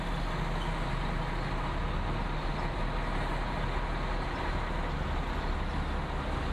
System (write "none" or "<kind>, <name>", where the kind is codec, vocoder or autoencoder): none